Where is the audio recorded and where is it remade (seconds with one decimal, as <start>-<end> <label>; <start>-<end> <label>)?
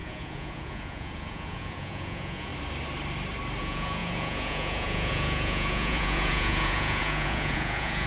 0.0-2.5 remade; 2.5-3.6 recorded; 3.6-8.1 remade